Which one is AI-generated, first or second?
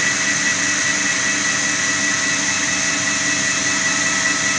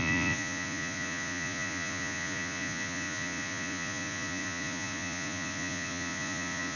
second